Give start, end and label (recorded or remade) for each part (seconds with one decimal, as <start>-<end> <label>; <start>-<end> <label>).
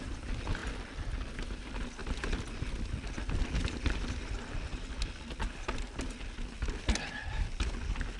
0.0-8.2 recorded